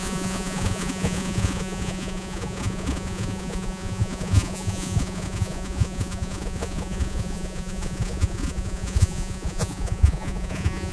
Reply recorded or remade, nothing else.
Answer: remade